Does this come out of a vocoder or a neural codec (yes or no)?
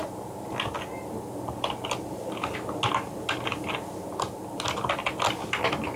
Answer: no